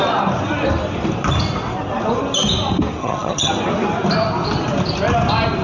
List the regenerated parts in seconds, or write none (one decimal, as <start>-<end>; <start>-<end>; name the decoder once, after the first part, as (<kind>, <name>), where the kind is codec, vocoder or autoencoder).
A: 3.0-3.5 (vocoder, HiFi-GAN)